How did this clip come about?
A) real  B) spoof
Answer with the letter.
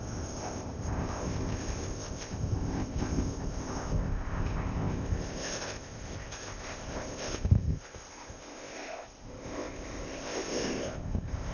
B